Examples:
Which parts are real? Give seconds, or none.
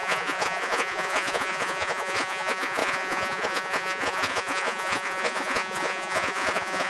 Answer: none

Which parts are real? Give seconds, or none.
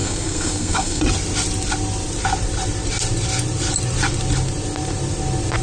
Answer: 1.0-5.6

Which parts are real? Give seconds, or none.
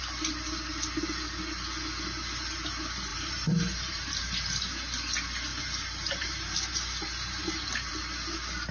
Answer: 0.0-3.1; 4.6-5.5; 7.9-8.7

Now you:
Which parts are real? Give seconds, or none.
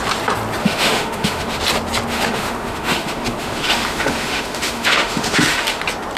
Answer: 0.0-0.6; 1.6-2.1; 5.8-6.2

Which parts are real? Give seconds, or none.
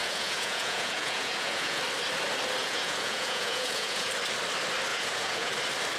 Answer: 1.8-2.6; 4.1-4.9; 5.5-6.0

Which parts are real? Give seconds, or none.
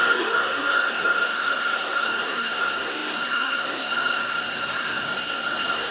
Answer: none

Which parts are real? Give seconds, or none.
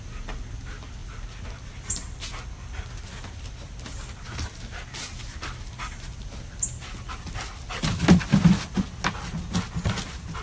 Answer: 0.0-10.4